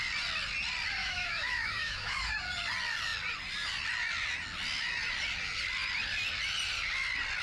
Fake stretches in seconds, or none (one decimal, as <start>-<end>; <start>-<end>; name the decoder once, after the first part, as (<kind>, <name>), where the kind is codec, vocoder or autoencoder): 1.0-2.3 (autoencoder, DAC-VAE)